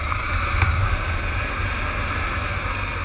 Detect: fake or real real